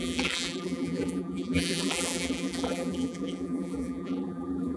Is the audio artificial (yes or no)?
yes